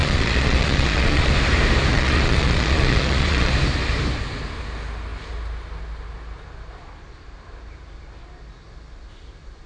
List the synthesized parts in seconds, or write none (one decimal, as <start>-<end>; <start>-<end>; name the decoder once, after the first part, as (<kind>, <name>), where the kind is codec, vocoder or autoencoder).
0.0-1.3 (vocoder, Vocos); 1.9-3.5